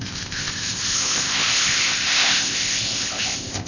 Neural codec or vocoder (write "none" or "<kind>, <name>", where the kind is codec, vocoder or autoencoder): codec, ZipCodec